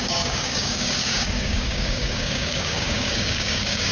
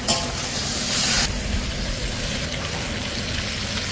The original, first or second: second